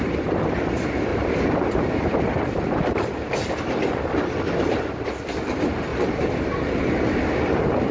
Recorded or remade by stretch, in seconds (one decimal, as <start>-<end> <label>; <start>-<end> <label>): 0.0-1.1 recorded; 1.1-3.4 remade; 3.4-5.9 recorded; 5.9-7.9 remade